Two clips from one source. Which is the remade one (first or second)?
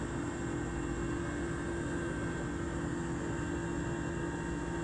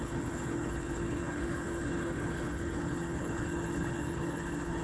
second